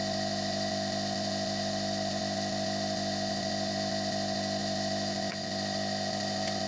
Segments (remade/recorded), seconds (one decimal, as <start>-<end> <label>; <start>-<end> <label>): 0.0-6.7 recorded